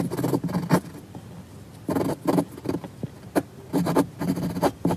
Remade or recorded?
recorded